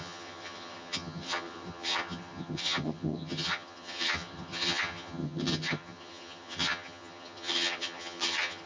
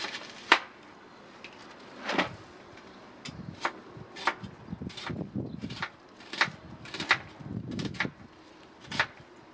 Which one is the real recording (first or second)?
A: second